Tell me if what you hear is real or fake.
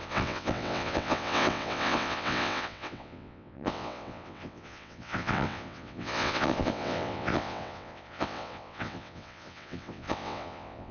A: fake